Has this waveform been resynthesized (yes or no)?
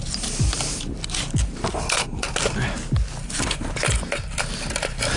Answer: no